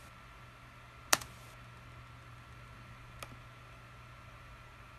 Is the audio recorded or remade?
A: recorded